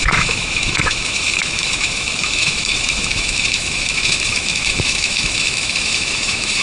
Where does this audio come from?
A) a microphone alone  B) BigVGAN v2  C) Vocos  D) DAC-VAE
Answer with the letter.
D